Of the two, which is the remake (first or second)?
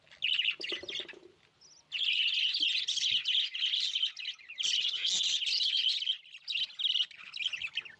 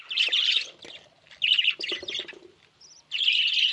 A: second